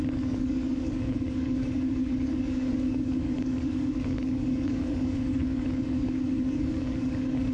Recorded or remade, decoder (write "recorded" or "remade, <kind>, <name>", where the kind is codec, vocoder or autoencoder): remade, codec, DAC